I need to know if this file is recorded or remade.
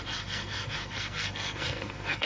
remade